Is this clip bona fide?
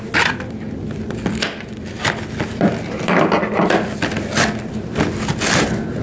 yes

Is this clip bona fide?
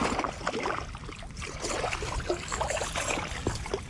yes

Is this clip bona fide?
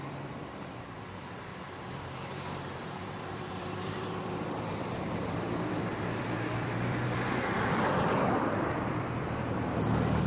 no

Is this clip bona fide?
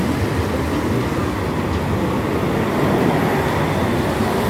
yes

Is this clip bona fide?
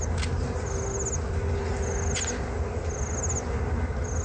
yes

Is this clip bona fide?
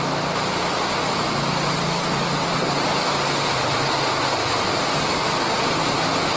yes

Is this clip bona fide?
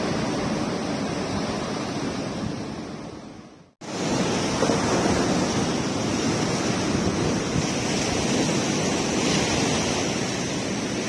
yes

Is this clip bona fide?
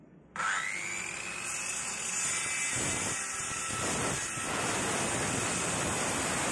yes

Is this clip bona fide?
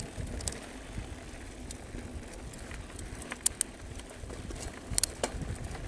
yes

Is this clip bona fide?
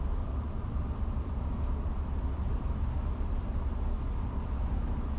no